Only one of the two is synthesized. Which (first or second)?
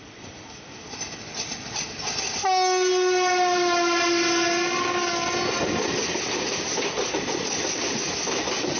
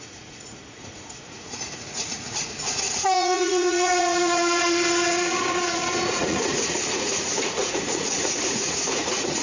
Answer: second